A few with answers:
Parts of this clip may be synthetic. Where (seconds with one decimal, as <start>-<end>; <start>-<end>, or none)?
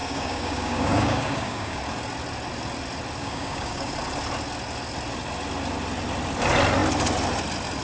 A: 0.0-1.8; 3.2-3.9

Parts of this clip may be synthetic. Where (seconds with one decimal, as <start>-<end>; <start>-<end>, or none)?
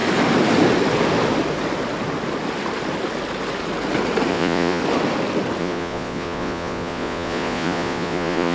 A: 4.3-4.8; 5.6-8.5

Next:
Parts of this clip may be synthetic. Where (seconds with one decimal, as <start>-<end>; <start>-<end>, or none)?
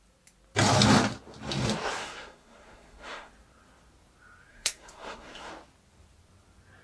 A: 2.0-3.3; 4.5-5.5